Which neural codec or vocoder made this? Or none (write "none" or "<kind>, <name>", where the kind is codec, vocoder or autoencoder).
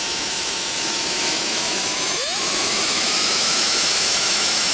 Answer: autoencoder, DAC-VAE